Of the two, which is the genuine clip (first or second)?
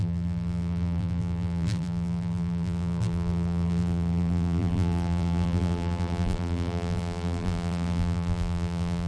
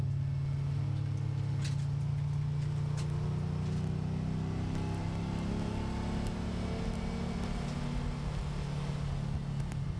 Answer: second